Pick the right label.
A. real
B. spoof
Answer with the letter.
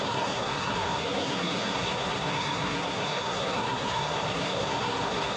B